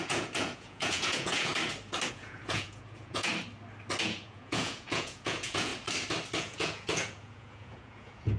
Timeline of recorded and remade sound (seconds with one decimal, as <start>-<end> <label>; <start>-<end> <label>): 0.0-1.5 remade; 1.5-2.1 recorded; 2.1-3.3 remade; 3.3-4.0 recorded; 4.0-5.7 remade; 5.7-6.4 recorded; 6.4-8.4 remade